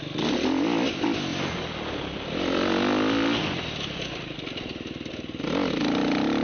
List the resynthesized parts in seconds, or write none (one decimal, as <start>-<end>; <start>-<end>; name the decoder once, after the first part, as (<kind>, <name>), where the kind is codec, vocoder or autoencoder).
none